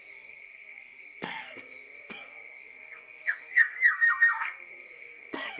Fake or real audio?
fake